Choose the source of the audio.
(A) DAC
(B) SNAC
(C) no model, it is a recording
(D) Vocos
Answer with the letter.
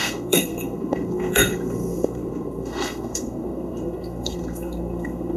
B